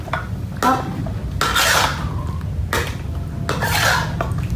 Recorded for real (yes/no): yes